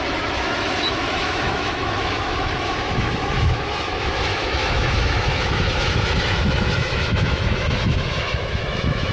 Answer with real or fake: fake